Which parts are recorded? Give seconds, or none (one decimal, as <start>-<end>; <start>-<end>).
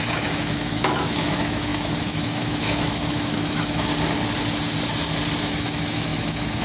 3.9-5.4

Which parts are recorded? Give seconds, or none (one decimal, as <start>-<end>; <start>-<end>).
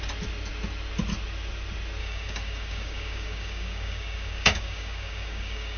0.0-2.0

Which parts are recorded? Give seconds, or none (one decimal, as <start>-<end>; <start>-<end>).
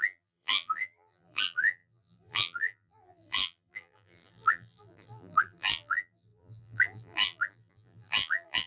none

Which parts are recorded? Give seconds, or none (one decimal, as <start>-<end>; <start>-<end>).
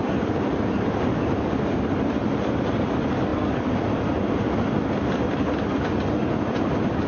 0.0-7.1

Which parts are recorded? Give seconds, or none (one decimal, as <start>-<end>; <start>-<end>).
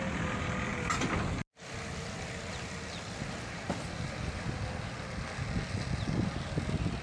0.0-7.0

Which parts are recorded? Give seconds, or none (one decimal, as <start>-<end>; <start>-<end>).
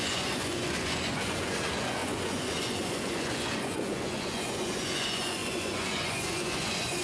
none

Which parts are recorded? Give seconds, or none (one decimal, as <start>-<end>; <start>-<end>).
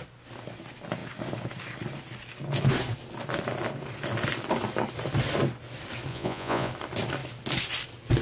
0.0-6.1; 6.7-8.2